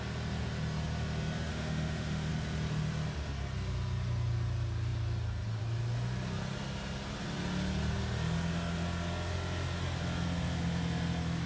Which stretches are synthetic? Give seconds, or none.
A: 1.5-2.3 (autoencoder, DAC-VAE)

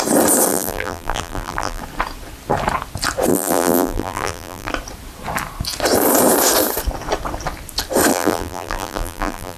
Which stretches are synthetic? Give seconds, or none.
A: 0.5-1.8 (vocoder, BigVGAN v2); 3.3-4.7; 8.1-9.6

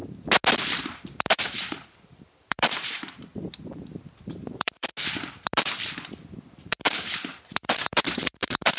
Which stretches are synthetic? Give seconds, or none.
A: 0.7-3.3 (vocoder, BigVGAN v2); 4.2-4.9; 6.6-8.8

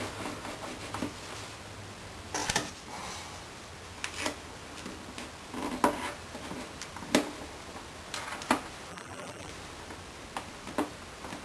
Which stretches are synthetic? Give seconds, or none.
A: 8.9-9.5 (vocoder, BigVGAN v2)

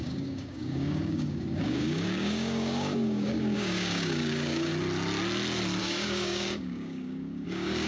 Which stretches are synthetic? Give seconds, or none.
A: 0.0-4.7 (codec, DAC); 5.8-7.9

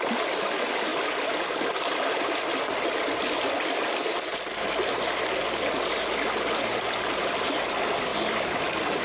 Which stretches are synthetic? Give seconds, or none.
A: none

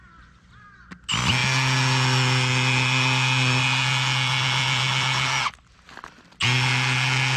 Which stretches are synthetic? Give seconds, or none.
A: none